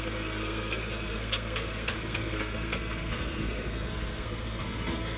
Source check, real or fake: fake